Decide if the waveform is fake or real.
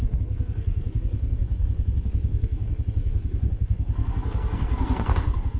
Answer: fake